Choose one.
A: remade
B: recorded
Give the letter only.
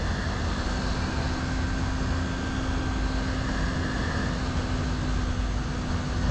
B